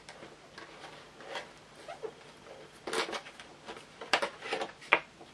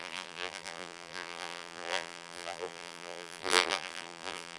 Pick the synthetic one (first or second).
second